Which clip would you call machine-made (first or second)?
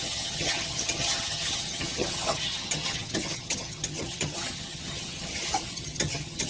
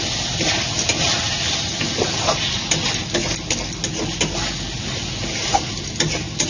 first